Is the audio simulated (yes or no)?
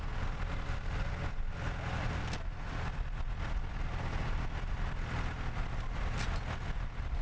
no